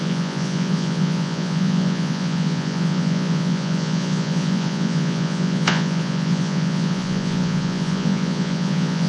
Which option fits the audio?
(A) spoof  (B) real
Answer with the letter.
A